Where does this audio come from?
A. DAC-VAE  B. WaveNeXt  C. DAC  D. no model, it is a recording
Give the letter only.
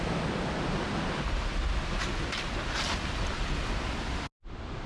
D